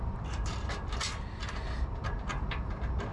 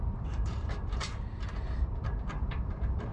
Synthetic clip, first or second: second